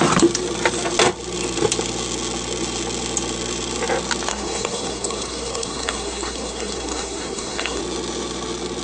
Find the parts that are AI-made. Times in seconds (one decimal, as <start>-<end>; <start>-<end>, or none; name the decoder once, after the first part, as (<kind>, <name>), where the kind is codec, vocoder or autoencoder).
4.3-7.8 (codec, SNAC)